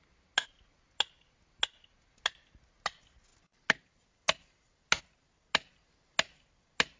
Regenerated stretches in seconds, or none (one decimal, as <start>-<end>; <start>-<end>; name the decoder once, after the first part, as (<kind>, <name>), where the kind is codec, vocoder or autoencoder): none